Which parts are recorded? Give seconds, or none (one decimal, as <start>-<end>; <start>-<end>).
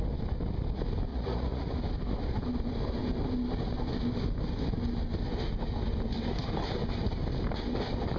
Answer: 0.0-1.1; 1.7-8.2